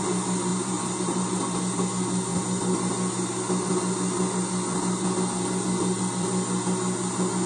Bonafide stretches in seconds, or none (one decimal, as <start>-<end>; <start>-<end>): 0.0-0.5; 1.6-7.5

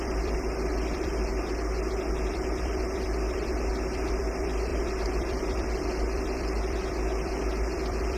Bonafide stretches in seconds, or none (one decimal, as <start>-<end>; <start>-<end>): 1.3-2.3

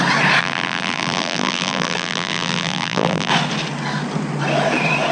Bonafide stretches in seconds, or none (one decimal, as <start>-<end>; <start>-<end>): 0.0-0.4; 3.3-5.1

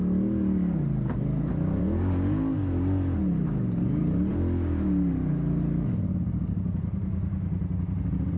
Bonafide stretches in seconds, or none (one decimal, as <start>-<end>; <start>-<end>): 0.0-8.4

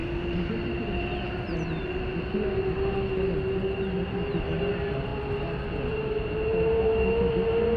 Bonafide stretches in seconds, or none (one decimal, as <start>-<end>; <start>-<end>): 0.0-7.8

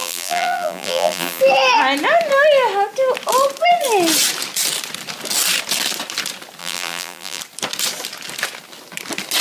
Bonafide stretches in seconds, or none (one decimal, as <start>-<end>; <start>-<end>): 1.4-6.6; 7.4-9.4

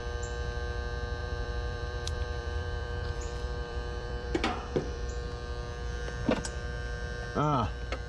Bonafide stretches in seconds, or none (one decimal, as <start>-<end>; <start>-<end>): 0.0-1.2; 5.1-8.1

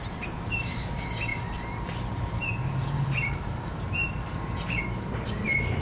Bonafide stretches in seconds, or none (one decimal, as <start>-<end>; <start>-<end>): 0.9-1.3; 4.8-5.8